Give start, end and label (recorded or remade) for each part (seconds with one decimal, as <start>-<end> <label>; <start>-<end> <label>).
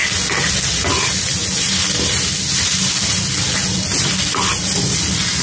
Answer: 0.0-5.4 recorded